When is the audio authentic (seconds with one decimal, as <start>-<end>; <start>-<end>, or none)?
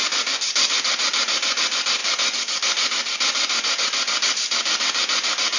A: 0.0-5.6